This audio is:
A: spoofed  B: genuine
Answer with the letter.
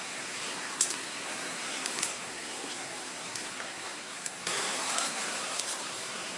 A